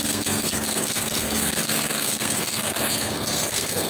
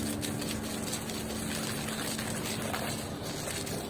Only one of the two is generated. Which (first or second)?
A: first